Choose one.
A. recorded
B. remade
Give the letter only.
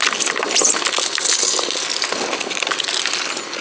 A